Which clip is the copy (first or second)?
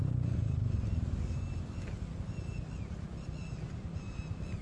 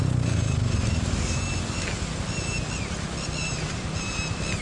first